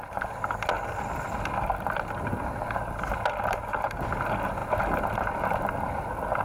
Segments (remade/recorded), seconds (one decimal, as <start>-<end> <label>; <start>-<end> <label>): 0.0-6.4 recorded